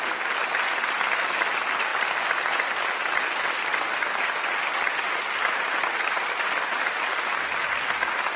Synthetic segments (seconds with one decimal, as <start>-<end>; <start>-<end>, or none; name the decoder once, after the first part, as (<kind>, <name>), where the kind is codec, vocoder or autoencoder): none